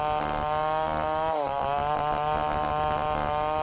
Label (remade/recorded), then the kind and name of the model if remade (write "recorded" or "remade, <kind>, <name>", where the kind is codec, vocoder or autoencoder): recorded